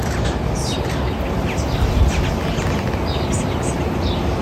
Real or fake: real